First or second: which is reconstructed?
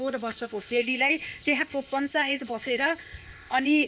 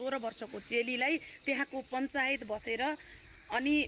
first